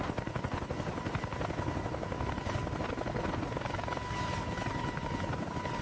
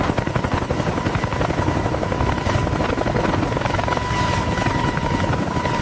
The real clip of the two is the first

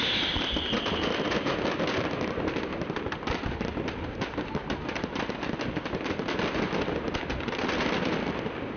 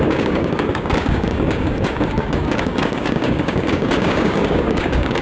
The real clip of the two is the first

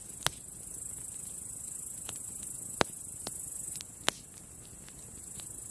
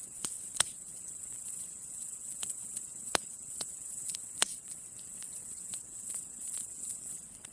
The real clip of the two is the first